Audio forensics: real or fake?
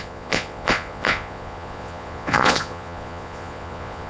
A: fake